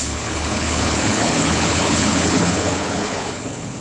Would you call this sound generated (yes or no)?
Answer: yes